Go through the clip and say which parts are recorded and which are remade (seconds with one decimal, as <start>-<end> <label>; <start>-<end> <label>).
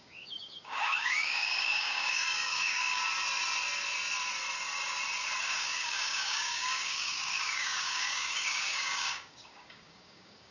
0.0-3.0 remade; 3.0-5.4 recorded; 5.4-10.5 remade